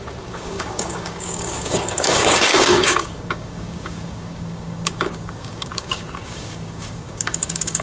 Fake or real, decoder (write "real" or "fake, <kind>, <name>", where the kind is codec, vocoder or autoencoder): fake, codec, DAC